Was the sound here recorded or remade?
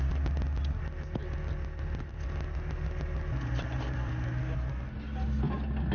recorded